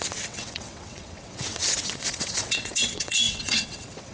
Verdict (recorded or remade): remade